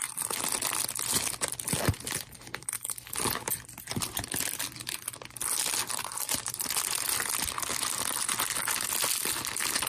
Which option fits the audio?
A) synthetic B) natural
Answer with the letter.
B